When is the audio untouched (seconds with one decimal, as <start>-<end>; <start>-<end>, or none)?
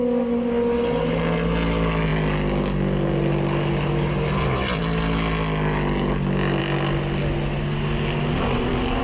0.0-9.0